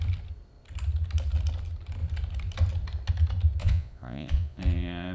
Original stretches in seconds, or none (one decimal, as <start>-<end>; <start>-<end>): 0.0-3.6; 4.6-5.1